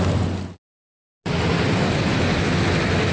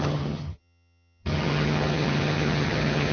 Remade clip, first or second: second